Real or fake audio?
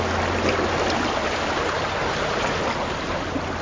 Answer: real